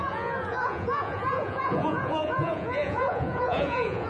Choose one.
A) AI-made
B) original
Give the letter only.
A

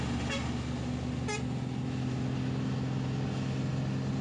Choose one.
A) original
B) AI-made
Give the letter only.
A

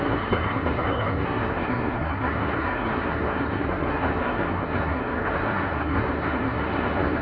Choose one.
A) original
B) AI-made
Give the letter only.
B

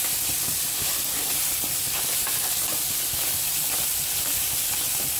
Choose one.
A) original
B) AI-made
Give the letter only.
B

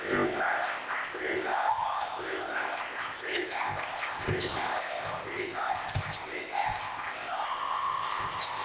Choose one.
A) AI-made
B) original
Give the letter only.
A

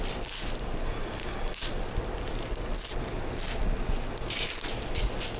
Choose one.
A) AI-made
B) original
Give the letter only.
B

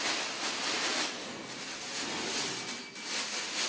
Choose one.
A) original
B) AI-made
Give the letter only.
A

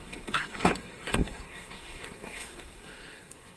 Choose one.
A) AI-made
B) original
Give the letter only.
A